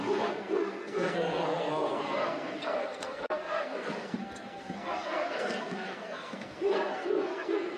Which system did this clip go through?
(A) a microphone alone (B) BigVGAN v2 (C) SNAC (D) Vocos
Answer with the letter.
C